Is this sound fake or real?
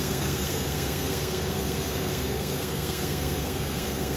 fake